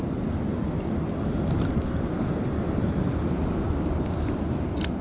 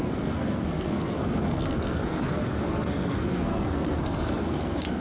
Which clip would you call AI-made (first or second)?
second